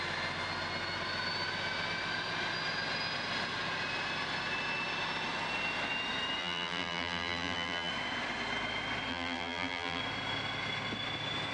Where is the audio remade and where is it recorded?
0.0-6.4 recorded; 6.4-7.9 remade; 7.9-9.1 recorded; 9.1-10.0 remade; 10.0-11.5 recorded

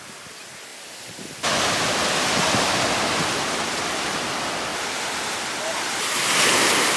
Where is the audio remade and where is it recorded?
0.0-4.7 recorded; 4.7-5.4 remade; 5.4-7.0 recorded

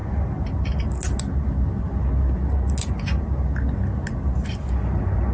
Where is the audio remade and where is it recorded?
0.0-5.3 recorded

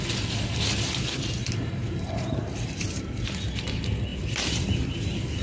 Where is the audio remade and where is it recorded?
0.0-1.4 recorded; 1.4-3.4 remade; 3.4-4.1 recorded; 4.1-4.6 remade; 4.6-5.4 recorded

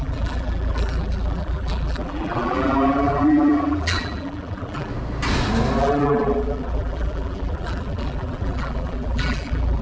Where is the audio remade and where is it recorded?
0.0-4.9 remade; 4.9-5.8 recorded; 5.8-9.8 remade

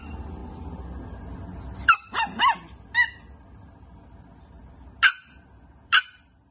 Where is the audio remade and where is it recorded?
0.0-6.5 recorded

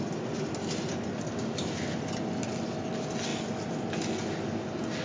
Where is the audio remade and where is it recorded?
0.0-3.3 recorded; 3.3-3.8 remade; 3.8-5.0 recorded